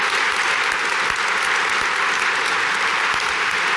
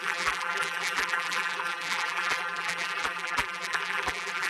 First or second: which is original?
first